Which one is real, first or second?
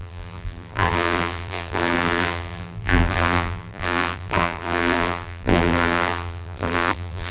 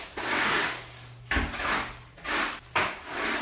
second